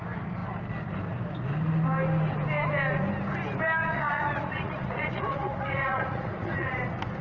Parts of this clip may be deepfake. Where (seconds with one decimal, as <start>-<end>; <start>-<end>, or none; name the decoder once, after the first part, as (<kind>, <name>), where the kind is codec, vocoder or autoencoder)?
3.8-6.8 (vocoder, Vocos)